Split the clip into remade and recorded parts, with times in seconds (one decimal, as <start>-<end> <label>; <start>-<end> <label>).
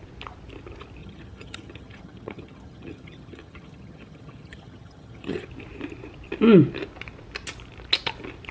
0.0-1.0 recorded; 1.0-5.5 remade; 5.5-8.5 recorded